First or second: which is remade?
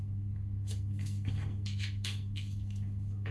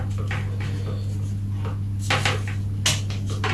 first